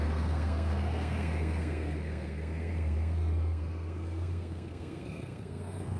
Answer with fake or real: fake